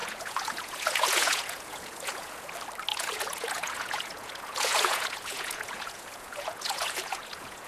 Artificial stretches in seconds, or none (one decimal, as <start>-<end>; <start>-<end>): 0.0-2.5; 2.9-7.7